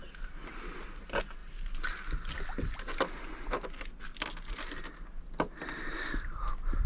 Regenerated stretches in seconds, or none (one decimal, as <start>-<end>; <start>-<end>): none